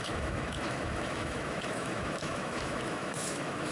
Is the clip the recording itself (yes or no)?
no